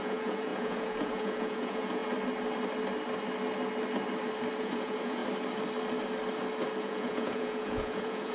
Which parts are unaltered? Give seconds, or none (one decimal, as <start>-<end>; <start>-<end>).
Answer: 2.0-4.6; 5.2-6.8